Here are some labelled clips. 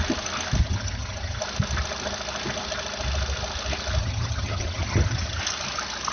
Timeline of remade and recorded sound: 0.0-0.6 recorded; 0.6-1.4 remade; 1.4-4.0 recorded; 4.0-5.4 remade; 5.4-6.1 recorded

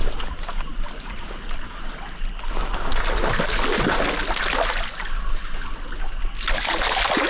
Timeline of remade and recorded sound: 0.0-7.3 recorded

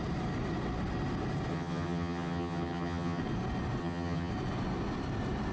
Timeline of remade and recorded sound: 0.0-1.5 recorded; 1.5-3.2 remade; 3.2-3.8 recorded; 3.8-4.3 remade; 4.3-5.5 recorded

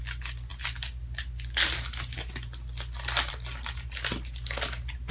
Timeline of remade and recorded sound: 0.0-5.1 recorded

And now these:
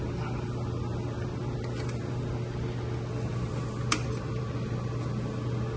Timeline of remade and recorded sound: 0.0-5.8 recorded

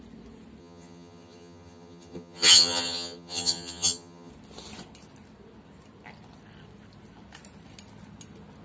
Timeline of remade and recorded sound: 0.0-0.6 recorded; 0.6-4.3 remade; 4.3-8.6 recorded

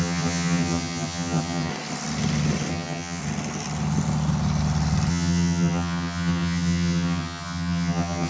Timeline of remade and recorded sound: 0.0-1.7 remade; 1.7-2.7 recorded; 2.7-3.2 remade; 3.2-5.1 recorded; 5.1-8.3 remade

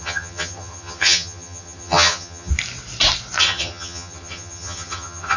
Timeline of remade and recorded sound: 0.0-2.5 remade; 2.5-3.4 recorded; 3.4-5.4 remade